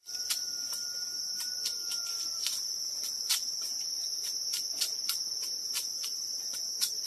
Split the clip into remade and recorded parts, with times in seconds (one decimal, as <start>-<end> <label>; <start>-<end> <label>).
0.0-7.1 recorded